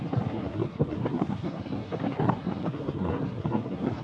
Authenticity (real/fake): fake